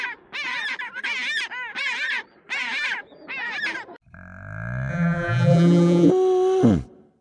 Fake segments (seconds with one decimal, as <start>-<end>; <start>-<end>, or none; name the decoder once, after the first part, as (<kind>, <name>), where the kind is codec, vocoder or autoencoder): 4.9-6.1 (vocoder, BigVGAN v2)